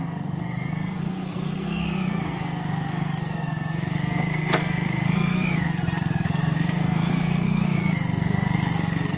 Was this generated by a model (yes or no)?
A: yes